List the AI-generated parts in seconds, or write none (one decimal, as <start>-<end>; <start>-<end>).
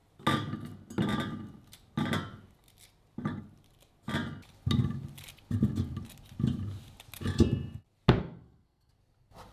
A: 8.2-8.9